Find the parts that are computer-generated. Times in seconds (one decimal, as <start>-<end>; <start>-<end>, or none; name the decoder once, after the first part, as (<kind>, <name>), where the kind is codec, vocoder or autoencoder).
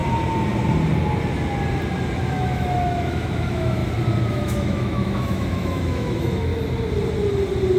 2.2-3.8 (autoencoder, DAC-VAE); 4.3-6.5